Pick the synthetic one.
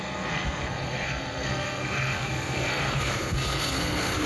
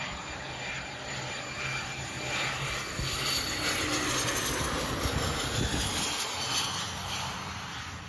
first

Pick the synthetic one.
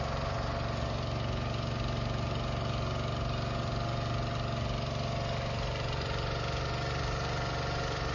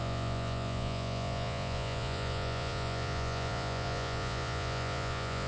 second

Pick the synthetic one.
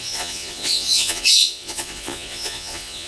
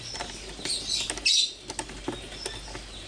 first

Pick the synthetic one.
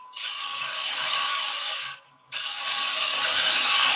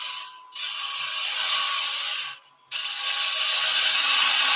first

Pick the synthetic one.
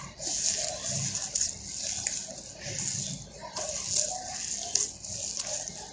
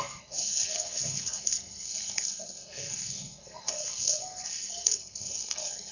second